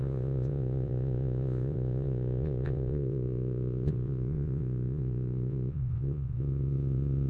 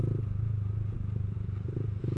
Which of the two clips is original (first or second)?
second